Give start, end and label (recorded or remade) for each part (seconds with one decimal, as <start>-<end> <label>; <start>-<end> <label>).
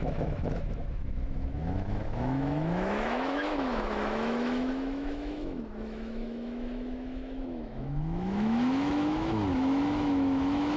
0.0-10.8 remade